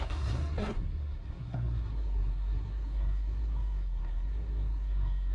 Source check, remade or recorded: remade